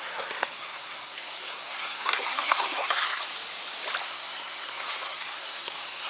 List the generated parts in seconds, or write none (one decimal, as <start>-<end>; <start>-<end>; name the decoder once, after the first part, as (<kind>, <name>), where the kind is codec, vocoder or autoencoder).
0.0-3.3 (codec, SNAC); 4.0-6.1